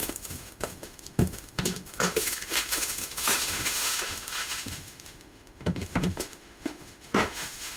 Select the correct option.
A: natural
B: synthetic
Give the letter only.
B